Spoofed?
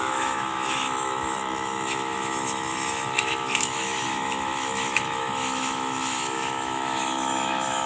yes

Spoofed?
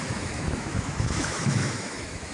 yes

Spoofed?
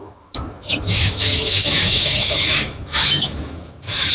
yes